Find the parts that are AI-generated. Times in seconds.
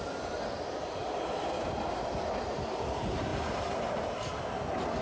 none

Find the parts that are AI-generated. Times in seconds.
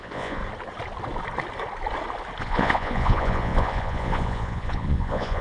0.0-0.4 (vocoder, Vocos); 2.4-5.4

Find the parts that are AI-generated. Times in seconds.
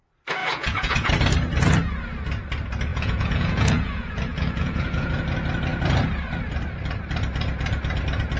0.4-1.1 (vocoder, Vocos); 2.9-5.1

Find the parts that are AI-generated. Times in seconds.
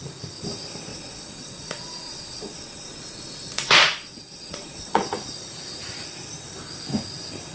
0.9-5.0 (vocoder, Vocos)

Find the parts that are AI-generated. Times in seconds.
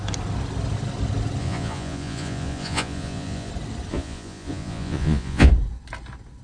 1.4-3.5 (vocoder, Vocos); 3.9-5.5